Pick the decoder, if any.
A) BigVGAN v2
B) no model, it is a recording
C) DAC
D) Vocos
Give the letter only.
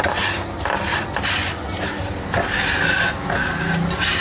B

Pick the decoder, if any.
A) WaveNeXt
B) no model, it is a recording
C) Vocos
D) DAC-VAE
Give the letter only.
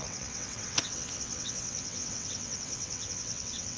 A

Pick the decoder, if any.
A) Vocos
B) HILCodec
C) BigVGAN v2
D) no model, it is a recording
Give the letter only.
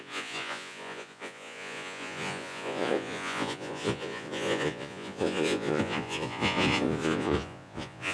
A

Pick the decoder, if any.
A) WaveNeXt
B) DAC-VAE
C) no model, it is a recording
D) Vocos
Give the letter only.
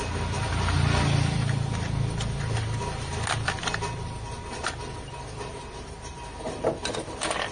C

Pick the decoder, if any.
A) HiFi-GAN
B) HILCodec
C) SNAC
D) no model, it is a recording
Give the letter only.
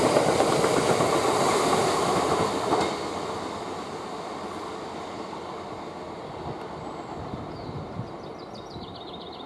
D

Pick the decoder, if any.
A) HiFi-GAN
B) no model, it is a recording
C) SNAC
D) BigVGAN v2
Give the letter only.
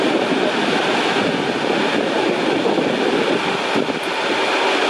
B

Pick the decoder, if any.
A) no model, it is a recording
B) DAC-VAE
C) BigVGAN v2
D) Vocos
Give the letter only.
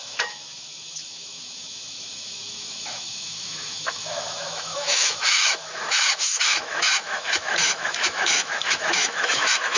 B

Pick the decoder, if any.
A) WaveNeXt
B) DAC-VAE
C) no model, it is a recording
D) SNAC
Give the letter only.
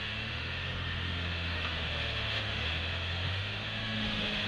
B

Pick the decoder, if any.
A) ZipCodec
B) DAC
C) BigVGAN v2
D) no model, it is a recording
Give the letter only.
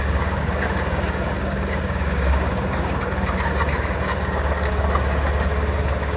B